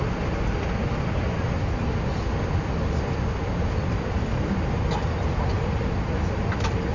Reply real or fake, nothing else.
real